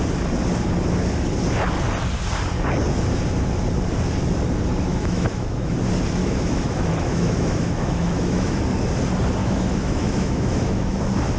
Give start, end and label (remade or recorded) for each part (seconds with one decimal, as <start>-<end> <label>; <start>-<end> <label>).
0.0-4.9 recorded; 4.9-5.8 remade; 5.8-6.2 recorded; 6.2-8.6 remade; 8.6-9.4 recorded; 9.4-11.0 remade; 11.0-11.4 recorded